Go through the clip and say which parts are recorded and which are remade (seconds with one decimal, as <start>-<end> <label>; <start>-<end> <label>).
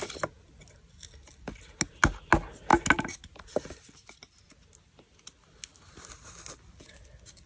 0.0-7.5 recorded